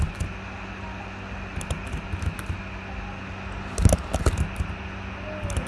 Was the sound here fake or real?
real